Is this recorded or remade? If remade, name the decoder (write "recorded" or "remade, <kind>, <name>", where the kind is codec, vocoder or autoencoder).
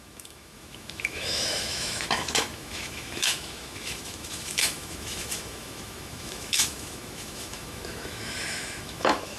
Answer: remade, autoencoder, DAC-VAE